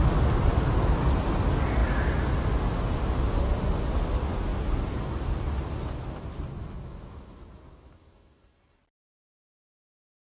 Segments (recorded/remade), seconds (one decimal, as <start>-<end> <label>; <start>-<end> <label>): 0.0-6.6 recorded; 6.6-8.8 remade; 8.8-10.3 recorded